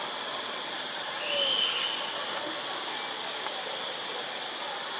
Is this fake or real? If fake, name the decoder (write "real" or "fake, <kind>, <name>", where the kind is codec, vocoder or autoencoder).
real